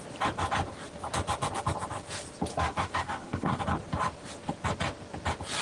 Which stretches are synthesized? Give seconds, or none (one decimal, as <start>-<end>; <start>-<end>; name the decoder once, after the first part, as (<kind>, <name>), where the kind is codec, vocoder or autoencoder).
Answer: 2.5-3.6 (codec, SNAC)